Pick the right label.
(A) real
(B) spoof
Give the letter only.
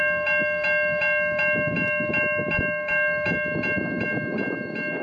A